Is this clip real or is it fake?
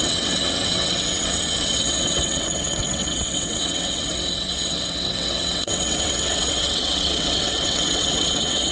fake